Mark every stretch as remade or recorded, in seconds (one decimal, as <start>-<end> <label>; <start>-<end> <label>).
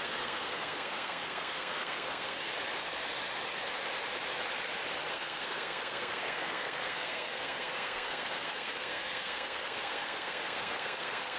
0.0-2.5 remade; 2.5-5.1 recorded; 5.1-11.4 remade